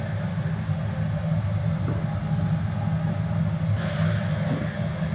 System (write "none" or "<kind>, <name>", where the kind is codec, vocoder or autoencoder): none